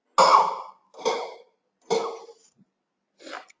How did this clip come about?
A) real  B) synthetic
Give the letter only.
A